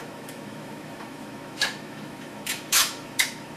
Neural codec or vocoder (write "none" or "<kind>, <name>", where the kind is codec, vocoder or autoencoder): autoencoder, DAC-VAE